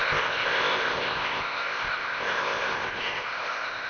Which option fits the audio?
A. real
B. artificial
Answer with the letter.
B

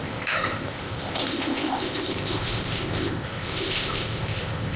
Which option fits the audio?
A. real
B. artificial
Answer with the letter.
B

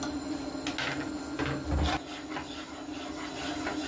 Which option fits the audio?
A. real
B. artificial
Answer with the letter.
A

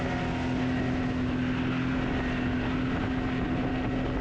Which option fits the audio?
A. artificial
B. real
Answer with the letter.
B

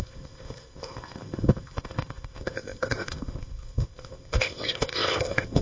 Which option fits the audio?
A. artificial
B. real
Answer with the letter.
A